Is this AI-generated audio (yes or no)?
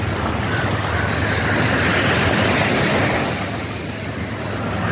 no